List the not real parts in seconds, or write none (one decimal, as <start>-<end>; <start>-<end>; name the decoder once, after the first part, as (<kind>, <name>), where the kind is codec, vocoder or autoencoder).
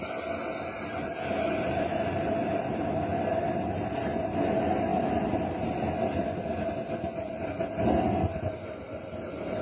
none